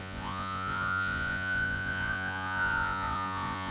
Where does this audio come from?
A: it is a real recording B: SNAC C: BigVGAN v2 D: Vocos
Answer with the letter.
D